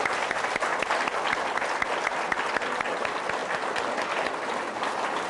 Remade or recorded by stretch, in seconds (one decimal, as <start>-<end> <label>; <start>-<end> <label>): 0.0-5.3 recorded

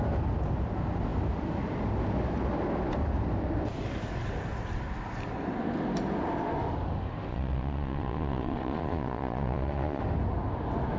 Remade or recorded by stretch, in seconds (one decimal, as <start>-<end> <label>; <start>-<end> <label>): 0.0-7.3 recorded; 7.3-10.0 remade; 10.0-11.0 recorded

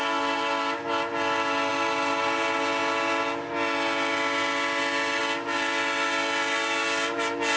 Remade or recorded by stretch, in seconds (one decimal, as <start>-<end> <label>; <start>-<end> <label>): 0.0-7.6 recorded